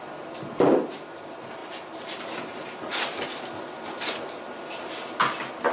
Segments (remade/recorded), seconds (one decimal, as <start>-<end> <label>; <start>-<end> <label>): 0.0-5.7 recorded